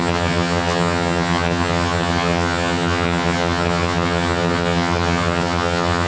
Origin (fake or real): fake